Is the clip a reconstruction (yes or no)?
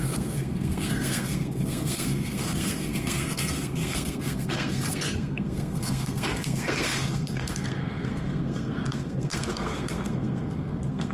yes